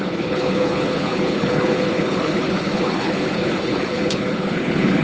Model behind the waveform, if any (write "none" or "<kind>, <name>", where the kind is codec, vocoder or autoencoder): codec, HILCodec